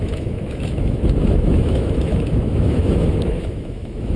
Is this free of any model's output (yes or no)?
no